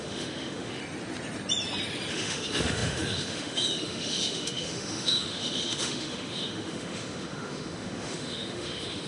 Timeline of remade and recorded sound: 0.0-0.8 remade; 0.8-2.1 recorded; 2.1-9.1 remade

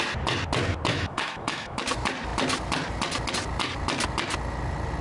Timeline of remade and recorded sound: 0.0-0.9 recorded; 0.9-1.8 remade; 1.8-5.0 recorded

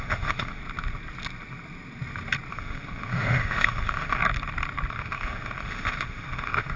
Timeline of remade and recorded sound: 0.0-0.6 remade; 0.6-2.5 recorded; 2.5-4.2 remade; 4.2-4.9 recorded; 4.9-6.8 remade

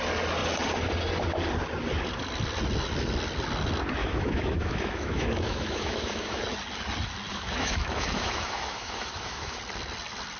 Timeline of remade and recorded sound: 0.0-4.0 recorded; 4.0-6.4 remade; 6.4-7.3 recorded; 7.3-9.6 remade; 9.6-10.4 recorded

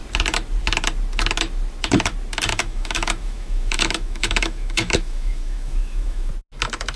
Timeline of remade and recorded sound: 0.0-2.5 recorded; 2.5-6.3 remade; 6.3-7.0 recorded

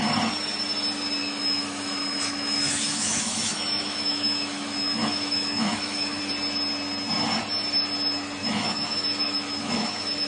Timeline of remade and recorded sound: 0.0-1.2 recorded; 1.2-6.2 remade; 6.2-8.4 recorded; 8.4-10.3 remade

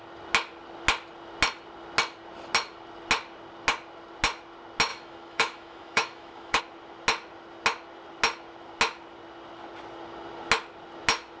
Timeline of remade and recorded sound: 0.0-4.9 recorded; 4.9-6.6 remade; 6.6-11.4 recorded

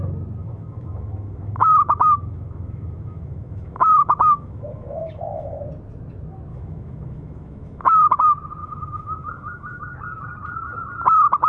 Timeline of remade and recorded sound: 0.0-0.4 recorded; 0.4-5.6 remade; 5.6-6.5 recorded; 6.5-8.2 remade; 8.2-8.6 recorded; 8.6-9.8 remade; 9.8-11.5 recorded